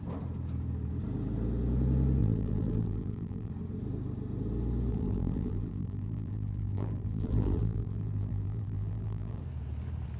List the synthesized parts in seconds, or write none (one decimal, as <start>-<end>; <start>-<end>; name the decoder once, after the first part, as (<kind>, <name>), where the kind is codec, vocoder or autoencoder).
2.2-3.5 (vocoder, BigVGAN v2); 4.9-9.4